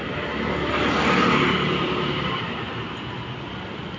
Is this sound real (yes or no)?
yes